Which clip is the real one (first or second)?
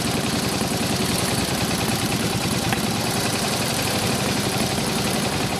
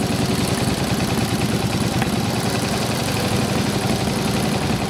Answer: second